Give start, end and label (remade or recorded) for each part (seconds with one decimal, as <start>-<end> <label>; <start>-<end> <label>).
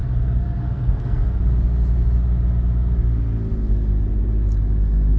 0.0-1.4 remade; 1.4-5.2 recorded